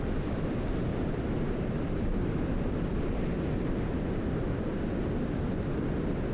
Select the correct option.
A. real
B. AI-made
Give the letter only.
A